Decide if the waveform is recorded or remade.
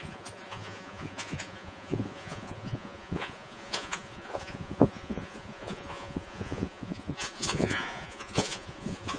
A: remade